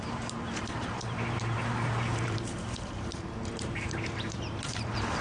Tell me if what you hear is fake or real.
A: fake